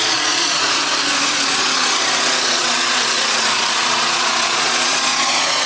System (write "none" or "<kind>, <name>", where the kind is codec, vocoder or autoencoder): vocoder, Vocos